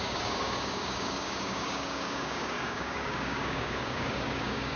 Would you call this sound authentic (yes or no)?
no